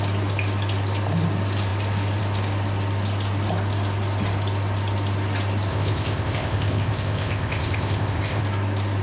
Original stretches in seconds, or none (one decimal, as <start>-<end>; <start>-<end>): 0.0-5.7; 8.4-9.0